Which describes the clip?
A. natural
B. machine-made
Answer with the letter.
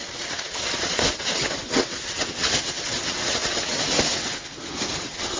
B